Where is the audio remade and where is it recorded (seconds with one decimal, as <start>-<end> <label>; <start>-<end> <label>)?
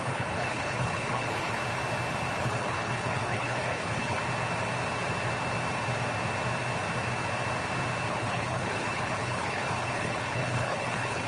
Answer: 0.0-1.6 remade; 1.6-2.4 recorded; 2.4-4.2 remade; 4.2-8.1 recorded; 8.1-11.3 remade